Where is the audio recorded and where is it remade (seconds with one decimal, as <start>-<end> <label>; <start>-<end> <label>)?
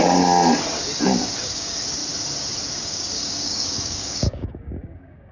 0.0-1.4 recorded; 1.4-2.0 remade; 2.0-2.7 recorded; 2.7-5.3 remade